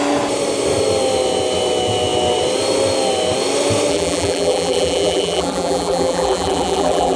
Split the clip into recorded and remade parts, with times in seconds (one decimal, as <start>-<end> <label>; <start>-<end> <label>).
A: 0.0-3.9 recorded; 3.9-7.2 remade